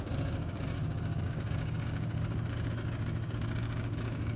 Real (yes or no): no